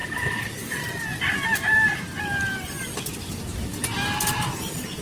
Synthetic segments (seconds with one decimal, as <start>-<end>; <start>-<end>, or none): 0.0-3.0